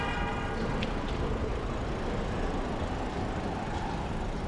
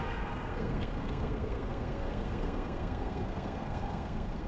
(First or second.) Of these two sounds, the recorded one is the first